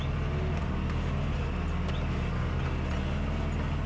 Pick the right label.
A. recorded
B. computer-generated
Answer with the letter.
A